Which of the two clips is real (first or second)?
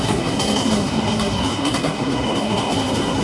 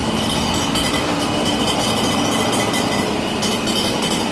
second